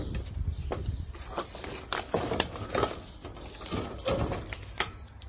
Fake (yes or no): no